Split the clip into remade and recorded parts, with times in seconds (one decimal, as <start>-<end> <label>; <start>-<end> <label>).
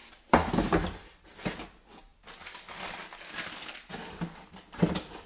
0.0-5.3 recorded